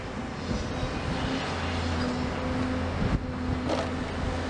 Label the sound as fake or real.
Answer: real